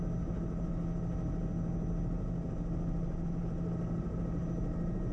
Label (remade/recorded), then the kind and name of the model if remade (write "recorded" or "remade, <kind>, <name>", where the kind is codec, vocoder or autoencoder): recorded